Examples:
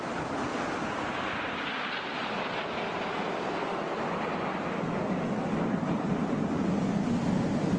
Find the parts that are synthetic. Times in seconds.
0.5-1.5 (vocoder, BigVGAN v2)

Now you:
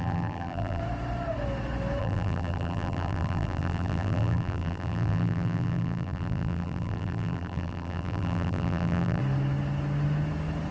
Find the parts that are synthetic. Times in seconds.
0.0-0.8 (vocoder, BigVGAN v2); 2.0-9.2

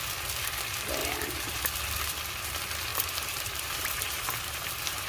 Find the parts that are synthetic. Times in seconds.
1.0-1.6 (vocoder, BigVGAN v2); 2.9-5.1